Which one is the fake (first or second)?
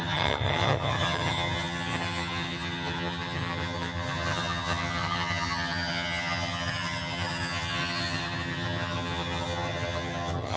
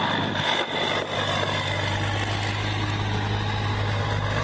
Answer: first